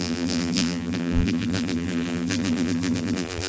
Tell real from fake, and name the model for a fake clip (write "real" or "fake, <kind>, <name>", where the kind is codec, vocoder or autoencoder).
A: fake, vocoder, BigVGAN v2